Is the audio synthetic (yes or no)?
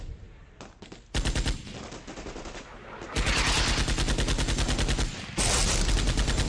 no